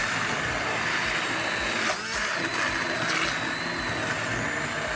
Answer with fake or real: real